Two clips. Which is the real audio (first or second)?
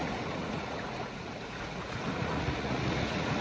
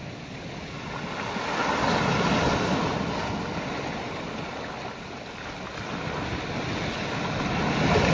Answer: second